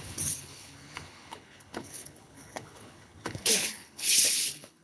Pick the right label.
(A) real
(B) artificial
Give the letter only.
B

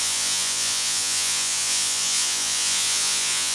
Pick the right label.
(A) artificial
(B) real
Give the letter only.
A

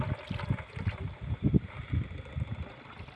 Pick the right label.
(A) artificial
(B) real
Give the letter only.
B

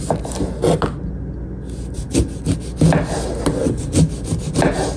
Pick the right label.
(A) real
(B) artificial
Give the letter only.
A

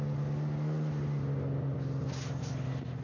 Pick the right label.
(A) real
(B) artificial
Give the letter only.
A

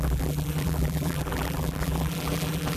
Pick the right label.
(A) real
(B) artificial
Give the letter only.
B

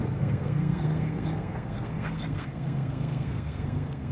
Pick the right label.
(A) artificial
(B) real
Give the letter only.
A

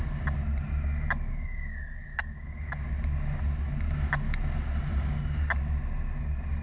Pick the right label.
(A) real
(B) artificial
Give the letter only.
A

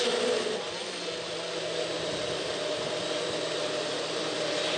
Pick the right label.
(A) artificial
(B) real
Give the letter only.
B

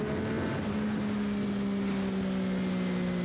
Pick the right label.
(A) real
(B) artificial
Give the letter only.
A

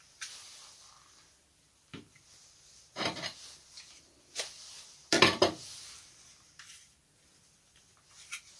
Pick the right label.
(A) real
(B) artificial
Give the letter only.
A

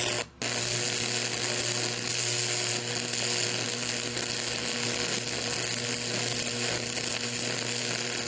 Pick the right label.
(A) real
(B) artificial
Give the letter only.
A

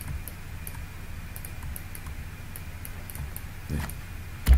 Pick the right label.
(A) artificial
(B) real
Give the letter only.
B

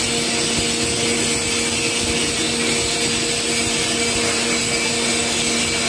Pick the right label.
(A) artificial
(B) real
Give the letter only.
B